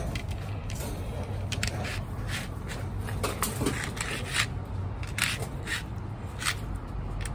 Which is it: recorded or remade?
recorded